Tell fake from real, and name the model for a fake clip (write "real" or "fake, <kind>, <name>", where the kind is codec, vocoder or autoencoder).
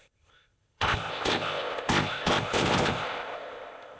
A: fake, codec, ZipCodec